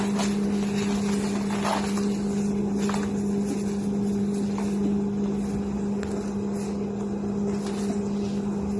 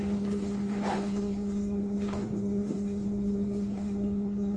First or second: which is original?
first